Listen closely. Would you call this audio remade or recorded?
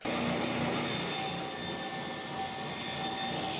recorded